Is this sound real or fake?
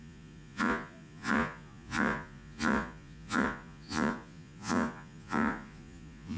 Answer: fake